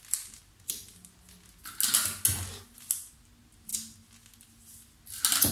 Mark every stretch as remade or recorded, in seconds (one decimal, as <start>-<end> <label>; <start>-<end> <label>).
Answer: 0.0-5.5 recorded